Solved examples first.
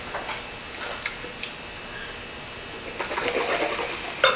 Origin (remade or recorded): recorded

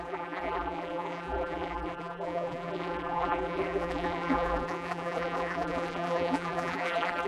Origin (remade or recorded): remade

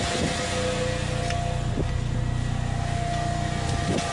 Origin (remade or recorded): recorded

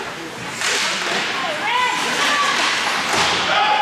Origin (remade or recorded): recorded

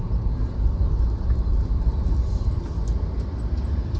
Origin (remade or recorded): recorded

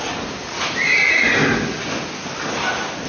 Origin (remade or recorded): recorded